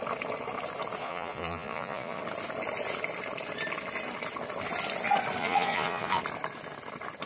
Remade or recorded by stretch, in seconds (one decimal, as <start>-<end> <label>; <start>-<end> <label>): 0.0-1.0 recorded; 1.0-2.2 remade; 2.2-5.4 recorded; 5.4-6.2 remade; 6.2-7.3 recorded